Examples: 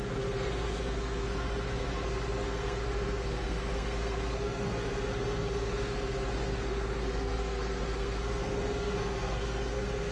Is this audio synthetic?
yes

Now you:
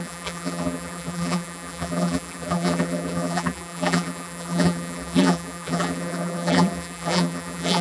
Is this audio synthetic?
yes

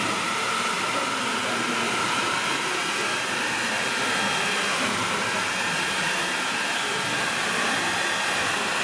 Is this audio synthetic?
yes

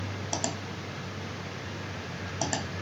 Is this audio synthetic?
no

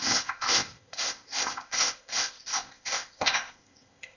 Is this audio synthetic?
yes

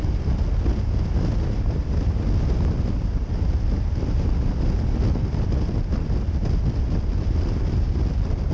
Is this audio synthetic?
no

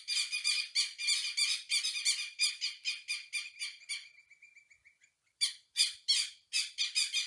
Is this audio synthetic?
yes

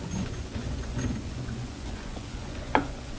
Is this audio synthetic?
yes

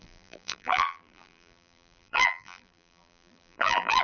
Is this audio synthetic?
yes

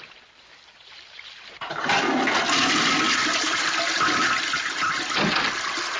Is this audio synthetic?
no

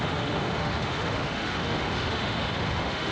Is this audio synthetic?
yes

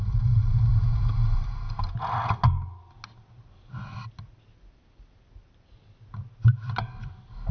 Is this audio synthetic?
no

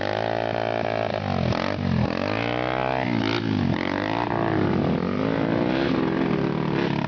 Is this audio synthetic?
no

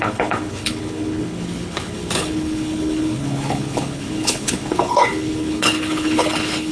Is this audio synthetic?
yes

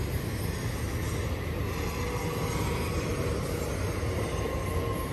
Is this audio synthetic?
no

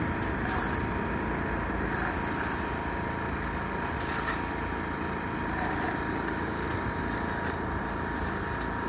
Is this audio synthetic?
no